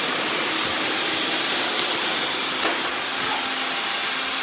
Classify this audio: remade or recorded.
recorded